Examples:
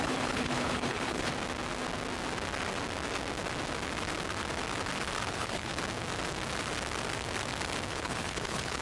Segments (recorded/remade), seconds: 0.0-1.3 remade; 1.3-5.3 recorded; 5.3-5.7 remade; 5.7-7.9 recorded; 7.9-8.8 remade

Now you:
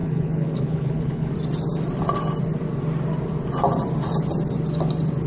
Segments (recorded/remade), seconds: 0.0-1.3 remade; 1.3-5.3 recorded